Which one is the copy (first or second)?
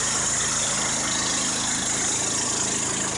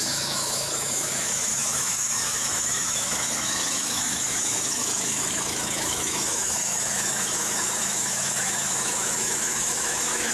second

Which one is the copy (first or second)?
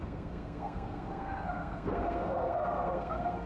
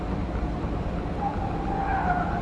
first